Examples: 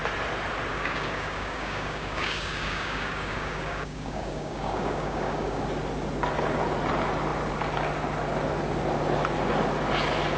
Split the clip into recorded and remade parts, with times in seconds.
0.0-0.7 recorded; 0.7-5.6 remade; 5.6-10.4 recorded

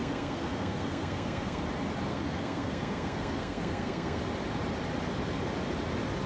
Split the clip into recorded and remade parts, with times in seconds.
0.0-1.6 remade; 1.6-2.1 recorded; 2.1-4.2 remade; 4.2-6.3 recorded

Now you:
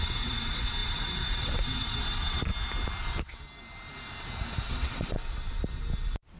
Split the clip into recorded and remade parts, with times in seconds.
0.0-2.5 remade; 2.5-4.7 recorded; 4.7-5.2 remade; 5.2-6.4 recorded

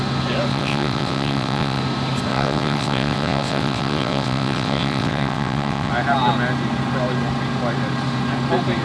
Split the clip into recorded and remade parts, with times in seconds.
0.0-0.5 recorded; 0.5-1.8 remade; 1.8-2.3 recorded; 2.3-5.9 remade; 5.9-8.8 recorded

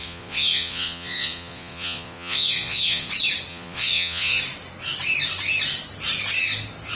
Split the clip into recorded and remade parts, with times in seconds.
0.0-3.1 remade; 3.1-3.5 recorded; 3.5-4.4 remade; 4.4-6.9 recorded

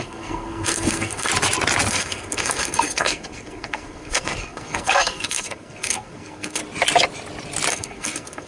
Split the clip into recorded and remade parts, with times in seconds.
0.0-1.3 remade; 1.3-1.9 recorded; 1.9-6.6 remade; 6.6-7.7 recorded; 7.7-8.5 remade

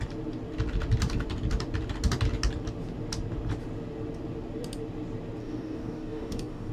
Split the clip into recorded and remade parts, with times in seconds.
0.0-5.4 recorded; 5.4-6.7 remade